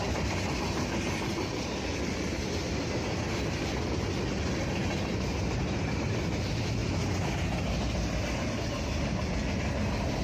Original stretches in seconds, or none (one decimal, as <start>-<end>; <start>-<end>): 0.0-10.2